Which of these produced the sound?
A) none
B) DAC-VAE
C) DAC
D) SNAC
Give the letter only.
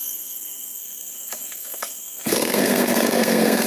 D